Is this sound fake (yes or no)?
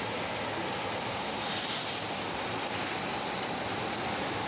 no